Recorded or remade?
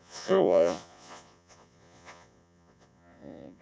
remade